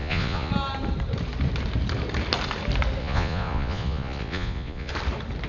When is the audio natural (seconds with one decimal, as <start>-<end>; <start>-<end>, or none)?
0.5-3.0; 4.9-5.5